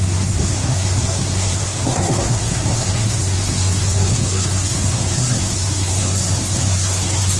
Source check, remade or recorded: remade